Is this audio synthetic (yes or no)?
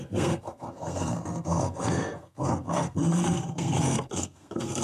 yes